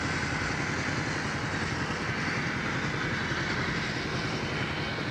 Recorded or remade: recorded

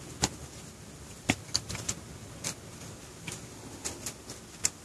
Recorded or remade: recorded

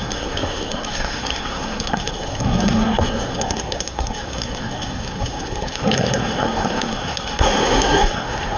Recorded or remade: remade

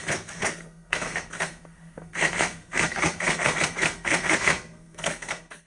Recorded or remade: remade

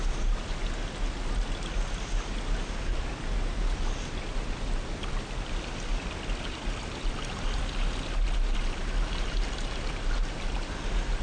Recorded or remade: recorded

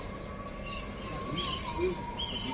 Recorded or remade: recorded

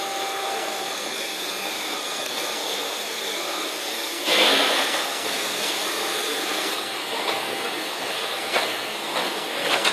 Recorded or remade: remade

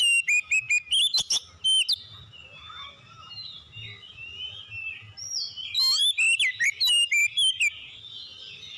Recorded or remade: recorded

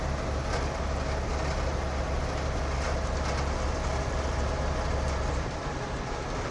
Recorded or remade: recorded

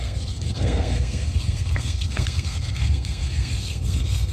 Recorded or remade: remade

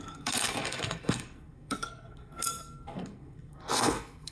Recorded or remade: remade